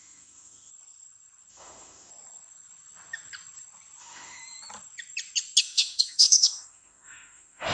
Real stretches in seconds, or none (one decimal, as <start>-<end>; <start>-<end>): 0.7-1.5; 2.1-4.0; 4.4-5.6